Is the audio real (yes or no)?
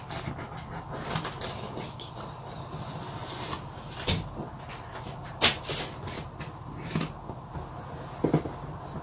yes